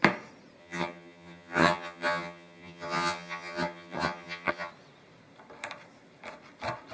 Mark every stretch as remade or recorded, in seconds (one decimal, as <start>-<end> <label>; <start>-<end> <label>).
0.0-0.6 recorded; 0.6-4.7 remade; 4.7-6.9 recorded